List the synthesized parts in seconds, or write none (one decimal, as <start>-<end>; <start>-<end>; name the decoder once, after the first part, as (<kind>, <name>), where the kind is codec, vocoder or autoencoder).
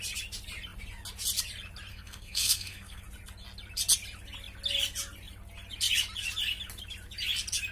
1.9-3.0 (codec, SNAC)